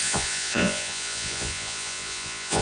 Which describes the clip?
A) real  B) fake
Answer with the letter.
B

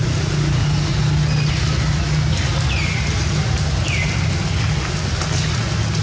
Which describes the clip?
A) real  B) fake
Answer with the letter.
A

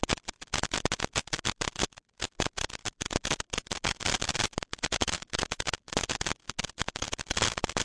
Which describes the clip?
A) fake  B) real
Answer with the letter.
B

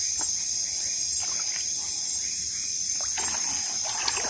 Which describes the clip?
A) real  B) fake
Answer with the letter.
A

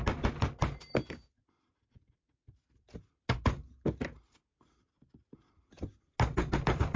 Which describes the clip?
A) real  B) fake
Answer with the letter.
A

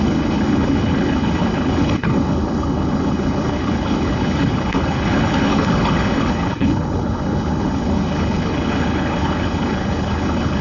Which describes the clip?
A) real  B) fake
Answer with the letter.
B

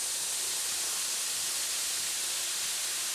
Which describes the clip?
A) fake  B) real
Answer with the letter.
B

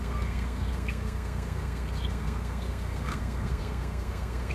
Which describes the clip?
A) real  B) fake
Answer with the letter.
B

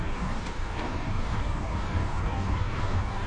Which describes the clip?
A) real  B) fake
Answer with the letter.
B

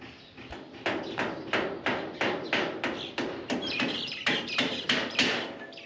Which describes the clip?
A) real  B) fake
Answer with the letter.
A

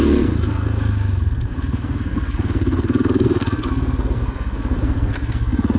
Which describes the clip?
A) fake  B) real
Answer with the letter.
A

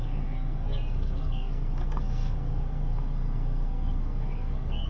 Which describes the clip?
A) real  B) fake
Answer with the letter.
B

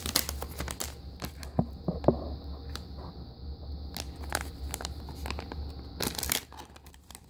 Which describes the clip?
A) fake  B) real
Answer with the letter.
B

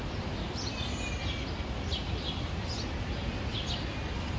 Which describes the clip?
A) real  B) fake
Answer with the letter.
A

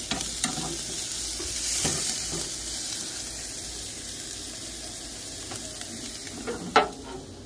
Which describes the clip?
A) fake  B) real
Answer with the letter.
B